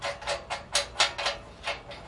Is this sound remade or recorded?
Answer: recorded